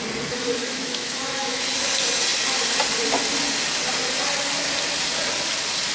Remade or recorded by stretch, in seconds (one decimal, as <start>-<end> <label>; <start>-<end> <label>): 0.0-0.6 recorded; 0.6-1.6 remade; 1.6-5.9 recorded